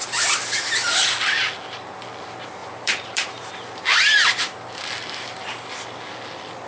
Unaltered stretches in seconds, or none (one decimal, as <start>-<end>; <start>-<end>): 0.0-2.6; 3.5-6.7